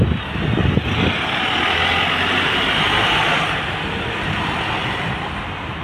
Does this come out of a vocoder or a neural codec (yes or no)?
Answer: no